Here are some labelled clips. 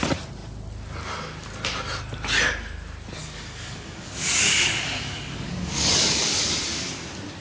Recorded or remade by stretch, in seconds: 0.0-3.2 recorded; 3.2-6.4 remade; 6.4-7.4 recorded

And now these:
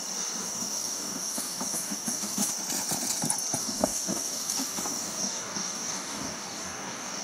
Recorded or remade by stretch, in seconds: 0.0-0.4 recorded; 0.4-2.5 remade; 2.5-3.6 recorded; 3.6-7.2 remade

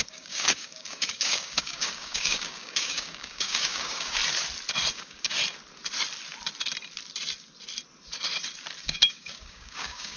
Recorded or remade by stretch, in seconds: 0.0-4.2 remade; 4.2-4.9 recorded; 4.9-5.4 remade; 5.4-8.8 recorded; 8.8-10.2 remade

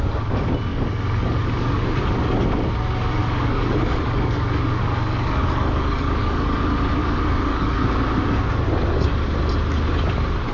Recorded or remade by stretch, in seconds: 0.0-0.7 recorded; 0.7-2.0 remade; 2.0-3.2 recorded; 3.2-6.6 remade; 6.6-7.0 recorded; 7.0-8.0 remade; 8.0-10.5 recorded

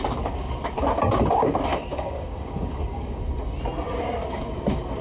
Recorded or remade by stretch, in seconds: 0.0-1.7 recorded; 1.7-3.2 remade; 3.2-5.0 recorded

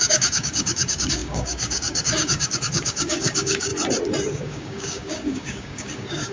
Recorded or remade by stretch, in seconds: 0.0-3.7 remade; 3.7-4.3 recorded; 4.3-6.3 remade

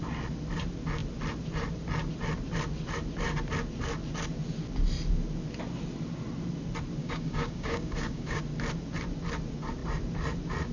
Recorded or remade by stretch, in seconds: 0.0-7.0 recorded; 7.0-8.4 remade; 8.4-10.7 recorded